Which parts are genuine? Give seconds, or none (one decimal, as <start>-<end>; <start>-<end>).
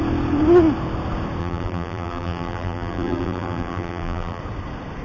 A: 0.0-1.4; 4.4-5.0